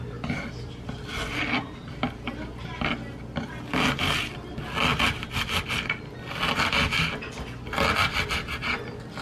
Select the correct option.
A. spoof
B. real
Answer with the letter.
B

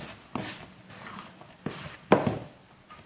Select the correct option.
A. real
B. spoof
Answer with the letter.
A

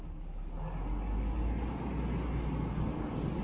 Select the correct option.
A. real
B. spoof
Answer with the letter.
A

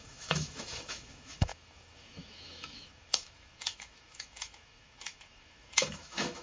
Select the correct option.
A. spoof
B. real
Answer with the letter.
A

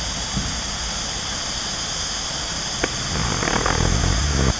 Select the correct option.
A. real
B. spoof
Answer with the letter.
A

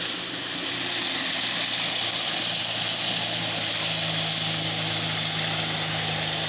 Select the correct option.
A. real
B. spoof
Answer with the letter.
A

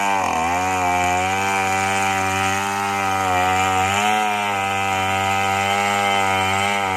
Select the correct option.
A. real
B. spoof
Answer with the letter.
A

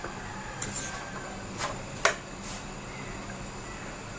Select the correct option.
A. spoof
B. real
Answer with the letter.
B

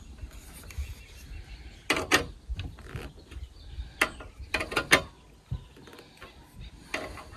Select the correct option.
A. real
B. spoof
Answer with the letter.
A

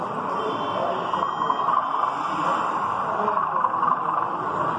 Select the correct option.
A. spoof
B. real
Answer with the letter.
B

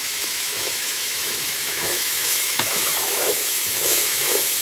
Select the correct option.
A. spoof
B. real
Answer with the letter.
A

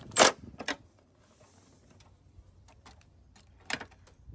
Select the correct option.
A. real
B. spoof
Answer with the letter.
A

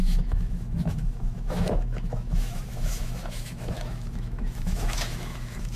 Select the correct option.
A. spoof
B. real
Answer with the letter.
A